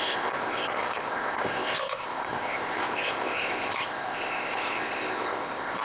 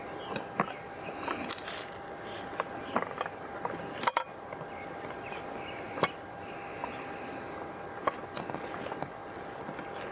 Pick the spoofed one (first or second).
first